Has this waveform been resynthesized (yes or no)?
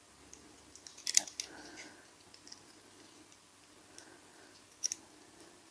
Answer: no